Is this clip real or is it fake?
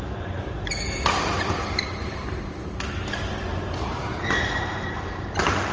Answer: fake